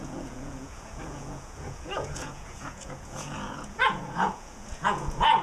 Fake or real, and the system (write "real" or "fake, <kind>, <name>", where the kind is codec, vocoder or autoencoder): fake, vocoder, Vocos